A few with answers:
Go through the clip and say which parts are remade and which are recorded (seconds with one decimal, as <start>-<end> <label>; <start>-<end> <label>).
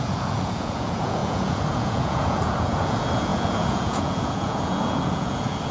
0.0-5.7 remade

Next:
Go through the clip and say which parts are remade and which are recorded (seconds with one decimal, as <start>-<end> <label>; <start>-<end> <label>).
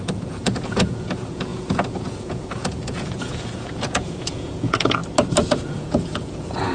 0.0-5.0 remade; 5.0-5.5 recorded; 5.5-6.7 remade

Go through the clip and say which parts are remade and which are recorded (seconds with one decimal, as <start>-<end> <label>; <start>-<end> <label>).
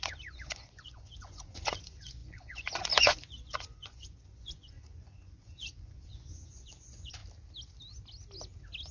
0.0-7.2 remade; 7.2-8.9 recorded